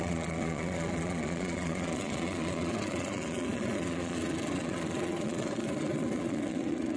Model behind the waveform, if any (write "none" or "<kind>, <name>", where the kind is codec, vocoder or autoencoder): vocoder, Vocos